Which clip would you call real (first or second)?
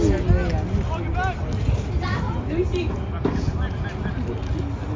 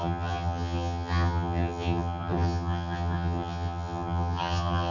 first